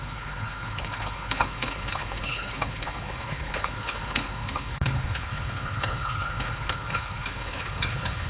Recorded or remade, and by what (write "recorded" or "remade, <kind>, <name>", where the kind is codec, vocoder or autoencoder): remade, codec, HILCodec